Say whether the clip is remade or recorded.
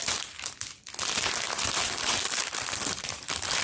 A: recorded